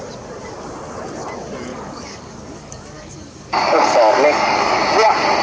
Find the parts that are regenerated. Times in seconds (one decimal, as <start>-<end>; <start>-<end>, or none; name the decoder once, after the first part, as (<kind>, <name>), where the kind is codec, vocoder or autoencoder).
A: 1.7-4.8 (codec, DAC)